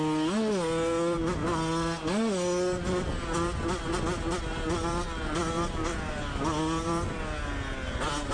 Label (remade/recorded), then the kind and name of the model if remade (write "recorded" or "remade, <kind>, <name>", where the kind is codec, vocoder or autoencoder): recorded